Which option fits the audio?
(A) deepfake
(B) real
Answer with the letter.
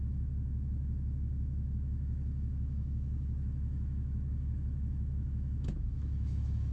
A